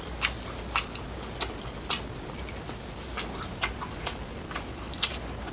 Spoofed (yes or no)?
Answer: no